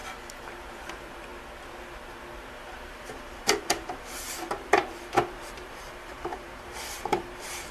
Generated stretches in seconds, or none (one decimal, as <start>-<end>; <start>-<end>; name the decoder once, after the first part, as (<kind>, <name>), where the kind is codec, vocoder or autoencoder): 0.9-1.3 (vocoder, BigVGAN v2); 2.5-7.7